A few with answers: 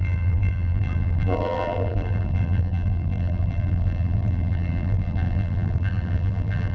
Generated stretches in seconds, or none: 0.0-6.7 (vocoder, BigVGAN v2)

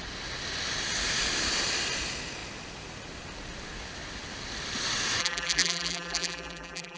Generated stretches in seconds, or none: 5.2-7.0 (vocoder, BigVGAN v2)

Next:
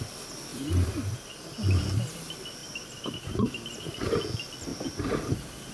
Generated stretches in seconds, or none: 2.6-3.2 (vocoder, BigVGAN v2)